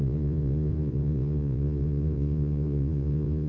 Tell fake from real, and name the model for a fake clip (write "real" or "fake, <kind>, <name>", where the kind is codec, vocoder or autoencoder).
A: fake, vocoder, Vocos